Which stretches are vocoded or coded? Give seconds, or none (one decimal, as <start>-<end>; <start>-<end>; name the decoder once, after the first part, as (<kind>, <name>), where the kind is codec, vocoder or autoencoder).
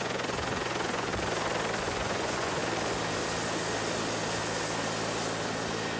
0.0-1.1 (vocoder, Vocos); 1.8-2.6